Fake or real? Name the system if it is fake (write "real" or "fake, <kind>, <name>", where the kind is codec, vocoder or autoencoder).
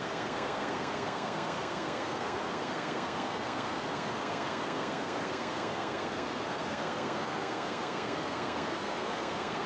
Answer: fake, codec, SNAC